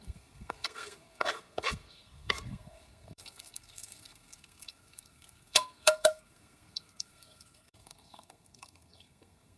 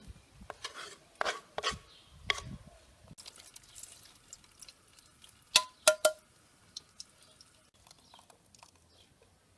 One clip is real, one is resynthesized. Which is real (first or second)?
second